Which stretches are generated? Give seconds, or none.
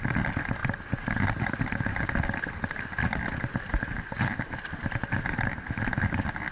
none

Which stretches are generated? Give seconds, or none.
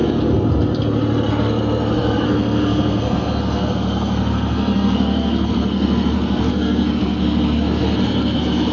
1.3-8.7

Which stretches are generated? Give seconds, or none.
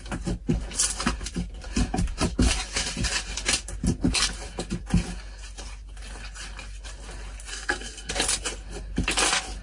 7.5-8.1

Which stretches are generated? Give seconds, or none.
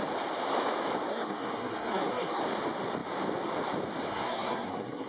1.1-2.4; 4.1-5.1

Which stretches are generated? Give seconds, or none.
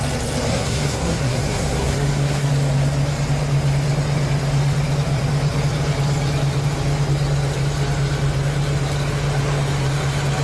0.5-2.5